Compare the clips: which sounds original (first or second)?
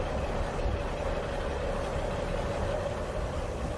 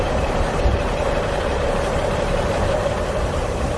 first